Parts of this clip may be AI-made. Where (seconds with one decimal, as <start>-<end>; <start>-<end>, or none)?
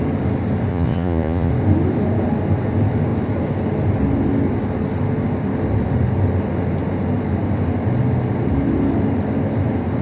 0.7-1.5